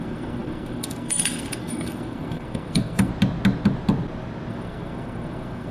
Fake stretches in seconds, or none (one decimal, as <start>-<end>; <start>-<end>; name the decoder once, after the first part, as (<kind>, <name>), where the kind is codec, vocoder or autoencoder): 0.0-3.1 (codec, SNAC); 4.5-5.7